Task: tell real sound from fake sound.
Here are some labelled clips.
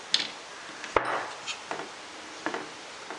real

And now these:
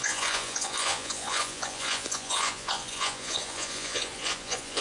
fake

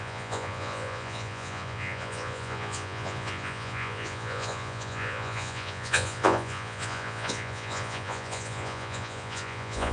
fake